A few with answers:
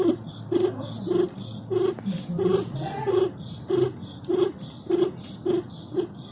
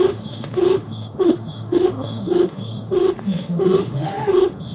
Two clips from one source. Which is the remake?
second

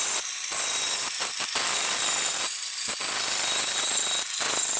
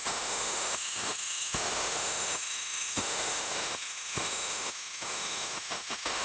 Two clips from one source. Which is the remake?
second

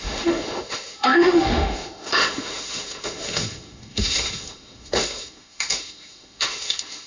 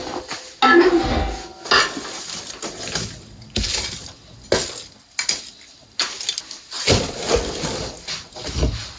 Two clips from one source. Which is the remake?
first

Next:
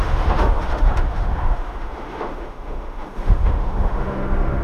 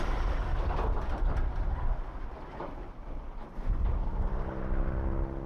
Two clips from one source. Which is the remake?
first